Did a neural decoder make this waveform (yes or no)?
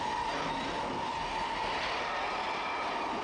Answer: no